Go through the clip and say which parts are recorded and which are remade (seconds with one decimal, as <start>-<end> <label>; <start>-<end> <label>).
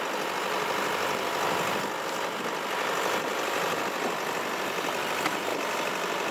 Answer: 0.0-5.5 recorded; 5.5-6.3 remade